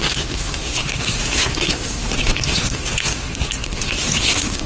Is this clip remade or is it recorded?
remade